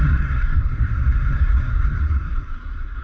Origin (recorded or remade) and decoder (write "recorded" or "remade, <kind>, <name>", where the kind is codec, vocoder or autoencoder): remade, codec, SNAC